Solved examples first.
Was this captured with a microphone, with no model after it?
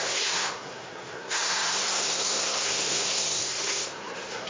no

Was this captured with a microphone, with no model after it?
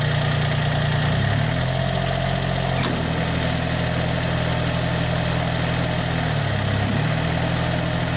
yes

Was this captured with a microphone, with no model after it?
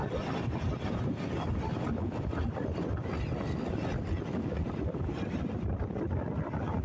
yes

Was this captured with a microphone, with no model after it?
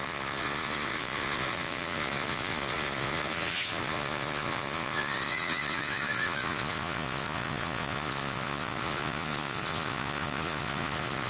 no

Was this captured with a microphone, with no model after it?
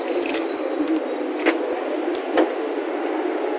yes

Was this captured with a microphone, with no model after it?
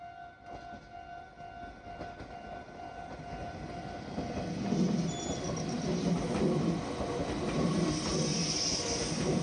yes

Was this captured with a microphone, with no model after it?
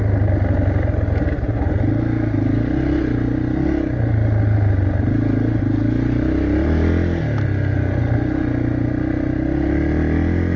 yes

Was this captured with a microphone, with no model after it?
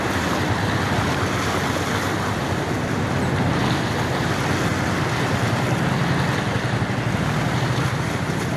yes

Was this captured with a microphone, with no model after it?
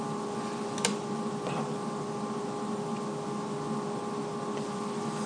yes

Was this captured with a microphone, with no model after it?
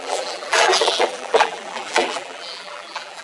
no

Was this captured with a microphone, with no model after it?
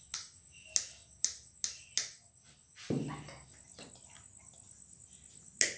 yes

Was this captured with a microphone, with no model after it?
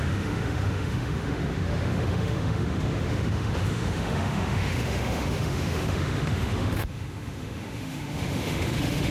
no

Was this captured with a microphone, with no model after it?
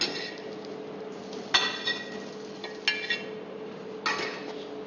yes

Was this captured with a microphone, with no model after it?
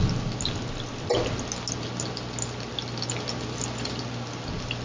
yes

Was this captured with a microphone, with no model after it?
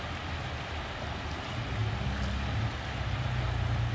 yes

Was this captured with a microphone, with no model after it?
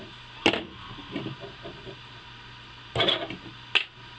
yes